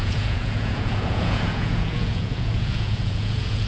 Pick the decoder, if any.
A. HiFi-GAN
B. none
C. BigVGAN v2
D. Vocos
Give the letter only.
D